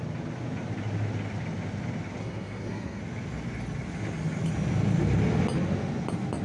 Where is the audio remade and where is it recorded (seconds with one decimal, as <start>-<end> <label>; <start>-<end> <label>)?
0.0-2.2 recorded; 2.2-3.0 remade; 3.0-6.4 recorded